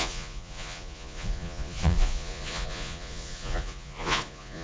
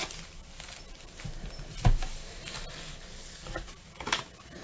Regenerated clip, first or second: first